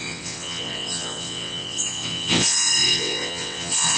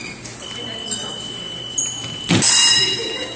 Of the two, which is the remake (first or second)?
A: first